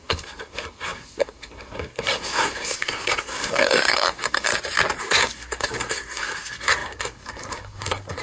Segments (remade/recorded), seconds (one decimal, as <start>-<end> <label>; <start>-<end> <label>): 0.0-4.5 remade; 4.5-5.0 recorded; 5.0-8.2 remade